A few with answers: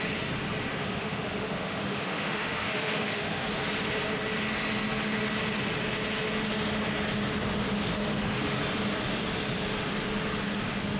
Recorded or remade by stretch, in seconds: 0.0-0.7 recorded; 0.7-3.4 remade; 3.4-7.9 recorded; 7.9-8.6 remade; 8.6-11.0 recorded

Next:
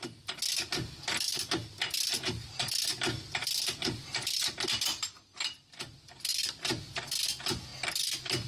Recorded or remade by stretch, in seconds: 0.0-8.5 recorded

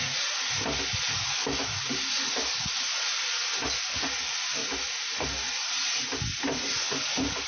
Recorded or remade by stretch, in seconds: 0.0-1.2 recorded; 1.2-1.8 remade; 1.8-7.5 recorded

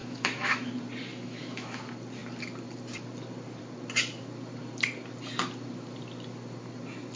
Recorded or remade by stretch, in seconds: 0.0-0.7 remade; 0.7-1.1 recorded; 1.1-1.8 remade; 1.8-7.2 recorded

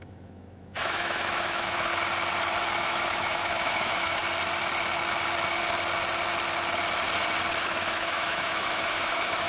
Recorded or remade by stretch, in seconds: 0.0-1.9 remade; 1.9-2.8 recorded; 2.8-4.2 remade; 4.2-7.6 recorded; 7.6-9.5 remade

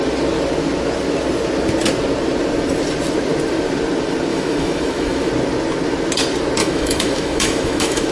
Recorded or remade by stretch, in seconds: 0.0-4.3 recorded; 4.3-5.3 remade; 5.3-6.6 recorded; 6.6-8.1 remade

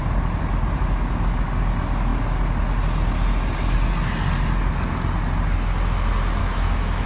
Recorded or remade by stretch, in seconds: 0.0-6.4 recorded; 6.4-7.1 remade

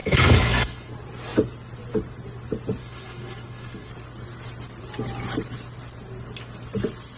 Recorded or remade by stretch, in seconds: 0.0-0.9 remade; 0.9-2.8 recorded; 2.8-3.9 remade; 3.9-7.2 recorded